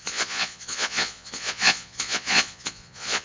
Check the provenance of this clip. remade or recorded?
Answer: remade